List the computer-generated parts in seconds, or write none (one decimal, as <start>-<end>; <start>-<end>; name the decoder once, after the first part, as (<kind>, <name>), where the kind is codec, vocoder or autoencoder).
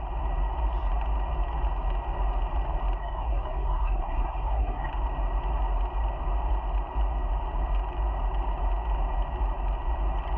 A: 3.0-4.9 (codec, SNAC)